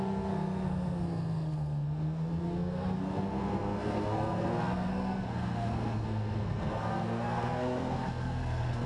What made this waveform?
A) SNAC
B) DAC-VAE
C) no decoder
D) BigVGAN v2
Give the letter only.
A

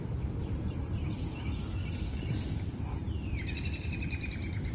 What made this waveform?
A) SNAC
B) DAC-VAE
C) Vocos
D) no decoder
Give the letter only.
D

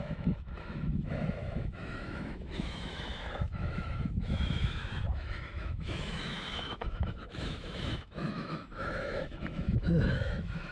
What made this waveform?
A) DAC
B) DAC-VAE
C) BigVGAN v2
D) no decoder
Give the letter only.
B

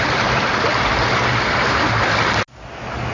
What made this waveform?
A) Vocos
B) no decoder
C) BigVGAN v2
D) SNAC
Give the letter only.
B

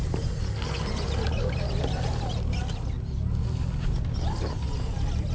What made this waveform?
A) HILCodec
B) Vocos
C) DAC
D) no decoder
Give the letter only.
D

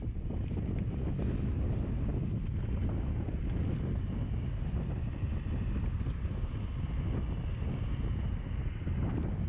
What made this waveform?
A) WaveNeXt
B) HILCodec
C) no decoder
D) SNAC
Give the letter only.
C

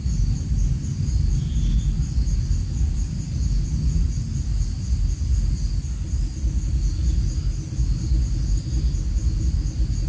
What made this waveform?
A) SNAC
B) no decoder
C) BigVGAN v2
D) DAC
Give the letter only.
B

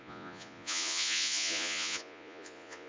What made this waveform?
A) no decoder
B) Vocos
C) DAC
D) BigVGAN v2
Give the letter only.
B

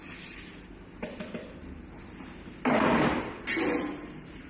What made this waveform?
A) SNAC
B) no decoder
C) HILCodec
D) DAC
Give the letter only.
B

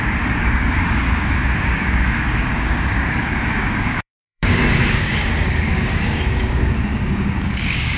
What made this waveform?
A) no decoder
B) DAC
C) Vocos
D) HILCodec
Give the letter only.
B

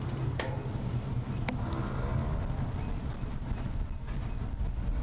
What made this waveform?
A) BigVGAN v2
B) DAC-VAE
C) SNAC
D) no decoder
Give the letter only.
D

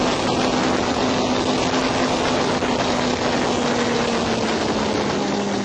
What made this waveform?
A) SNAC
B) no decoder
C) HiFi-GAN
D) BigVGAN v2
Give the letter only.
B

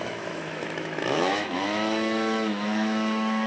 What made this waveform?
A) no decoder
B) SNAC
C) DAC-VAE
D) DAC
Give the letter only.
C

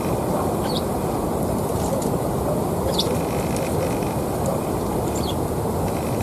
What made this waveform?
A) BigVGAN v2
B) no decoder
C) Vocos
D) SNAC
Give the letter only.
A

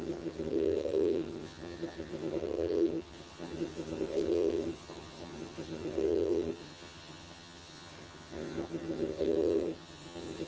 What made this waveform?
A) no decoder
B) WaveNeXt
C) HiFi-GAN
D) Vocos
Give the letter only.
C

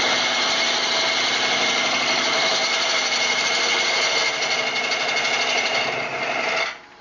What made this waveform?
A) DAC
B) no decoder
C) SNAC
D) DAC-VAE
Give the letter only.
B